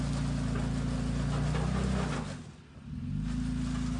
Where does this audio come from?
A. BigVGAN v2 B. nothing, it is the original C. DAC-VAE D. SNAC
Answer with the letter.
B